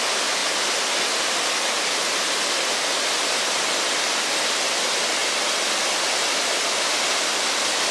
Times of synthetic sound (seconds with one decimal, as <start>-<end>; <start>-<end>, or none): none